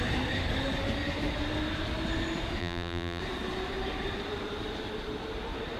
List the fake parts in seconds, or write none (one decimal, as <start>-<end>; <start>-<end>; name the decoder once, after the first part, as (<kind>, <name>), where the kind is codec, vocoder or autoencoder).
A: 2.6-3.2 (vocoder, BigVGAN v2)